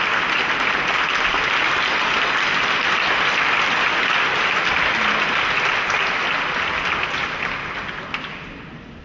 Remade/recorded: recorded